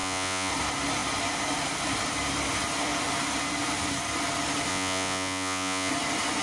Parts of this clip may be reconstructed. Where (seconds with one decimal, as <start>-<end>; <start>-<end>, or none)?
0.0-0.5; 4.7-5.9